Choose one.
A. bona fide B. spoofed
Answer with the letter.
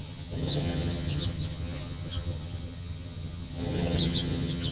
B